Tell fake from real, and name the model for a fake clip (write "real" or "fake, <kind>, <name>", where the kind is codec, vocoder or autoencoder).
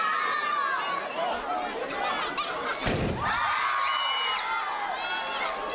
real